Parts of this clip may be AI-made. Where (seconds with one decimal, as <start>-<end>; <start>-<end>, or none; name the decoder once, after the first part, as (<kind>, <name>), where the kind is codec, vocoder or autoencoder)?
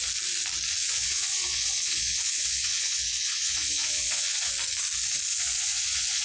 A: 0.8-4.5 (vocoder, Vocos); 5.3-6.2